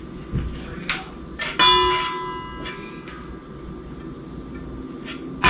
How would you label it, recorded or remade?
recorded